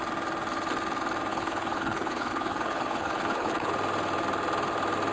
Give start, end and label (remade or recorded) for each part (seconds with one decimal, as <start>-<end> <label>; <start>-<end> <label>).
0.0-1.3 recorded; 1.3-3.7 remade; 3.7-5.1 recorded